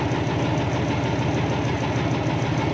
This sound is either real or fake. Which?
real